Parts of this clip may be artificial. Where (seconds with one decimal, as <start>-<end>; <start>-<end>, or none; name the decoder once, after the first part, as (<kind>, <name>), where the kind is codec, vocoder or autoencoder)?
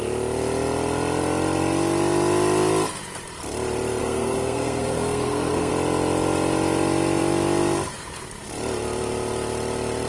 4.0-5.7 (codec, SNAC)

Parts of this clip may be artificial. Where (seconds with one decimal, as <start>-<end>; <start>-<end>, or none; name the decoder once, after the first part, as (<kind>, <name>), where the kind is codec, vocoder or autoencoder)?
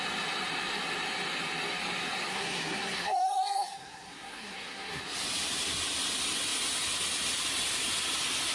2.3-5.0 (codec, SNAC)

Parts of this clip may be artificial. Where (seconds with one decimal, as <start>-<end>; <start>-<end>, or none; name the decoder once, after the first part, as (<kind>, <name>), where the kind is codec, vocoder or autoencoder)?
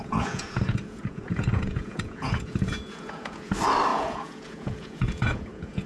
0.0-3.5 (vocoder, Vocos); 3.9-5.9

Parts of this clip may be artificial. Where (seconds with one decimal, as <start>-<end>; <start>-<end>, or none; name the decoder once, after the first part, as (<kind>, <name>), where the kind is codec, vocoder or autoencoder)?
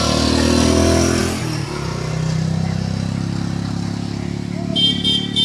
4.7-5.4 (vocoder, BigVGAN v2)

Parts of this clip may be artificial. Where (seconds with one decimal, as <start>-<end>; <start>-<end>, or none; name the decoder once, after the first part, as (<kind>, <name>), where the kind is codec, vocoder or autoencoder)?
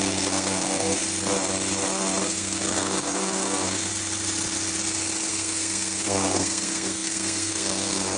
0.0-1.0 (codec, SNAC); 2.2-3.9; 5.3-8.2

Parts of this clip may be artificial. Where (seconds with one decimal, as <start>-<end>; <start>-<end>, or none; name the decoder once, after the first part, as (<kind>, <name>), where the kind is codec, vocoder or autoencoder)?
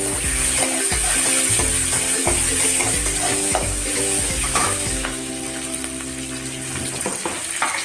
3.3-5.3 (autoencoder, DAC-VAE)